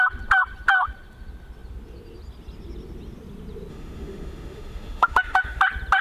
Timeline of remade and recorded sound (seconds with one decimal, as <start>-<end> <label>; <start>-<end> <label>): 0.0-3.7 recorded; 3.7-5.6 remade; 5.6-6.0 recorded